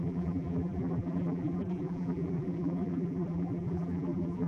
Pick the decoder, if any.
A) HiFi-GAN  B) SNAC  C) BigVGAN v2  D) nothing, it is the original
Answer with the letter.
C